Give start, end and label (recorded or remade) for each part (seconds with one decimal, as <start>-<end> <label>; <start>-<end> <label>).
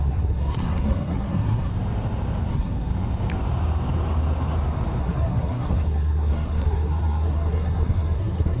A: 0.0-1.7 remade; 1.7-2.5 recorded; 2.5-2.9 remade; 2.9-5.0 recorded; 5.0-8.6 remade